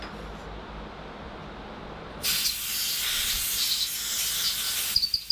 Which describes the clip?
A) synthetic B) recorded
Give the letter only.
B